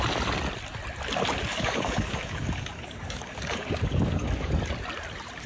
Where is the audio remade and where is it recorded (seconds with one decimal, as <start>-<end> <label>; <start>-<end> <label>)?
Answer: 0.0-1.5 recorded; 1.5-4.5 remade; 4.5-5.5 recorded